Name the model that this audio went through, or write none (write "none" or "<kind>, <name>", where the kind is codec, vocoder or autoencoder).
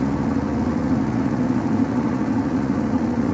vocoder, Vocos